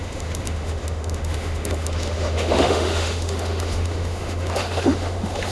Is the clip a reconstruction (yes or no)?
yes